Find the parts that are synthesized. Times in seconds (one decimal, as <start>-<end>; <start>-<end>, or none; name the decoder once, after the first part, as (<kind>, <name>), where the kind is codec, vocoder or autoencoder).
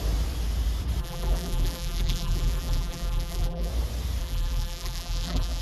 1.0-3.7 (vocoder, BigVGAN v2); 4.2-5.6